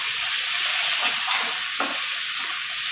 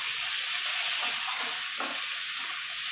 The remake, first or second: first